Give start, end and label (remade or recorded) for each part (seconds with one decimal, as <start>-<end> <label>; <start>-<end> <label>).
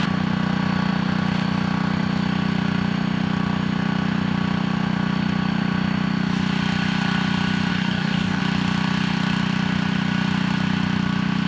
0.0-7.7 recorded; 7.7-8.4 remade; 8.4-11.5 recorded